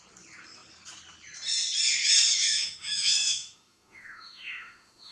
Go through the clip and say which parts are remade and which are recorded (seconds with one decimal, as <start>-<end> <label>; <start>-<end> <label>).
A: 0.0-2.4 recorded; 2.4-5.1 remade